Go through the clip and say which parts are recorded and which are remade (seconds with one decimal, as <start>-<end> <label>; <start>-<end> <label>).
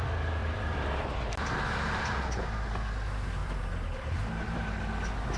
0.0-0.4 recorded; 0.4-1.3 remade; 1.3-3.4 recorded; 3.4-4.6 remade; 4.6-5.4 recorded